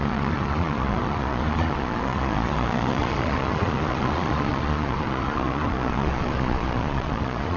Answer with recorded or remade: remade